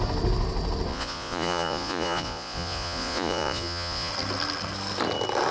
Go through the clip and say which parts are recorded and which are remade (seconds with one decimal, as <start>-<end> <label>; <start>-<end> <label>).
0.0-0.9 recorded; 0.9-4.1 remade; 4.1-5.5 recorded